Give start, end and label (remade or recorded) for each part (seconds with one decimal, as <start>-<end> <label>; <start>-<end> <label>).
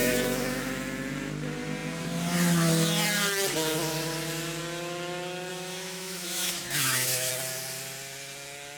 0.0-0.7 remade; 0.7-5.5 recorded; 5.5-7.3 remade; 7.3-8.8 recorded